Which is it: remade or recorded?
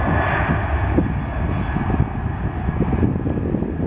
recorded